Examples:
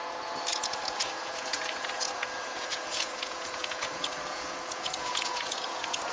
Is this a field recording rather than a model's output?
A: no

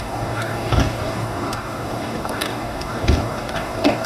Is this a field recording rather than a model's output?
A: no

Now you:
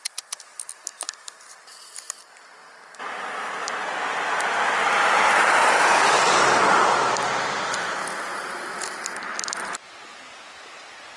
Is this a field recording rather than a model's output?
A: yes